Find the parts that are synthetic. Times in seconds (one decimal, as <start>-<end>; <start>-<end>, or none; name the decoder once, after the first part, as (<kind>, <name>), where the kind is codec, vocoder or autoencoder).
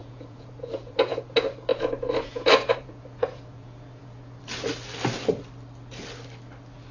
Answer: 0.0-1.2 (vocoder, Vocos); 1.7-4.4